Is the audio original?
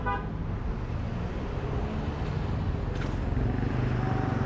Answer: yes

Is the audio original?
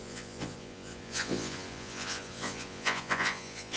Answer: no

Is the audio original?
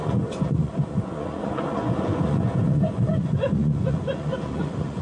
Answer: no